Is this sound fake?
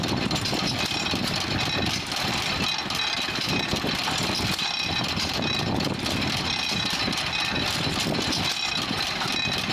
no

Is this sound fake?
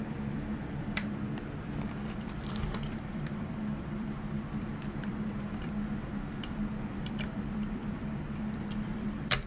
yes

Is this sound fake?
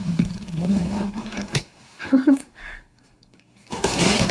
yes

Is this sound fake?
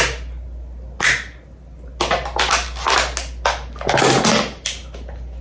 no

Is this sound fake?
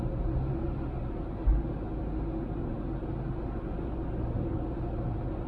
no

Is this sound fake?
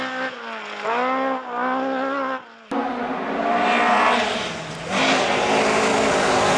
no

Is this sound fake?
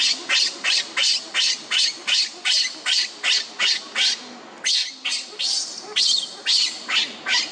no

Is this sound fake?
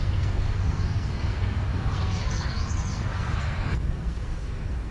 yes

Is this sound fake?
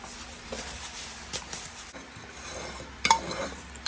no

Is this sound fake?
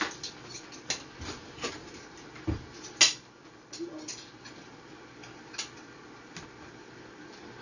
no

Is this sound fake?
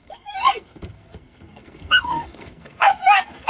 yes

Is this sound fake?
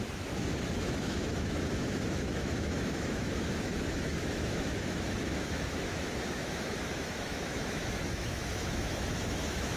yes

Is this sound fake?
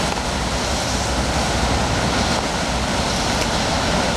no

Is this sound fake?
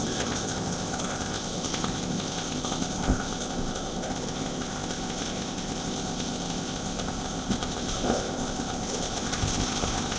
yes